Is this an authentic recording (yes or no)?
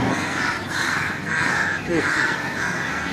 no